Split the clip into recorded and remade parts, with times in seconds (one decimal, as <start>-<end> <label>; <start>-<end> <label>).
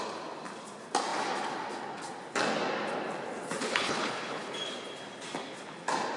0.0-3.6 recorded; 3.6-4.5 remade; 4.5-6.2 recorded